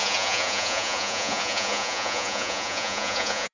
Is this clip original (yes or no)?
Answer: no